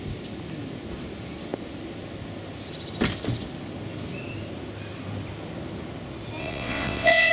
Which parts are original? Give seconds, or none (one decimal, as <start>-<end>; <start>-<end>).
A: 0.0-6.4